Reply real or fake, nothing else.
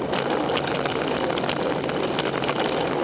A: real